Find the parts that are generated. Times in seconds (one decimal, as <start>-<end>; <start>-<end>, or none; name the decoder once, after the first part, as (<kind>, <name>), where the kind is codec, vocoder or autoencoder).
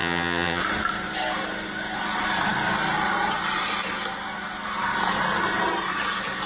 0.0-0.6 (vocoder, HiFi-GAN)